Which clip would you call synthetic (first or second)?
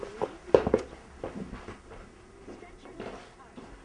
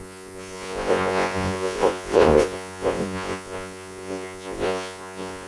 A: second